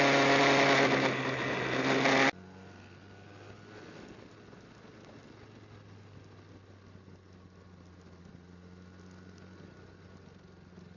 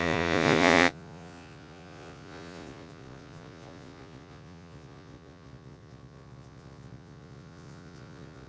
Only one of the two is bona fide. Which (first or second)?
first